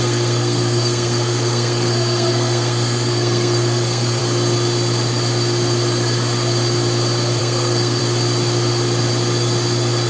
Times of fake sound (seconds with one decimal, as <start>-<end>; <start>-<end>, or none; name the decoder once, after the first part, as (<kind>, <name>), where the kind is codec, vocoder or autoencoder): 0.0-4.2 (codec, SNAC); 7.4-8.0

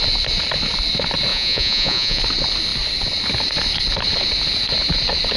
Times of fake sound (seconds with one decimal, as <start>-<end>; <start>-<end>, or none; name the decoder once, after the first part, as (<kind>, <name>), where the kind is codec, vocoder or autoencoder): 1.3-2.2 (vocoder, Vocos)